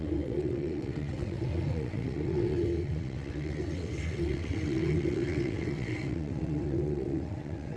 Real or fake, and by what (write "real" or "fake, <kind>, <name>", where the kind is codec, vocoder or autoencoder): fake, vocoder, WaveNeXt